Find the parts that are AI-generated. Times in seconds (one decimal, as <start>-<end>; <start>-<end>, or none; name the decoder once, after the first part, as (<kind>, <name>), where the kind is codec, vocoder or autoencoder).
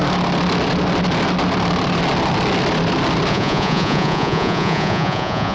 3.3-5.5 (vocoder, Vocos)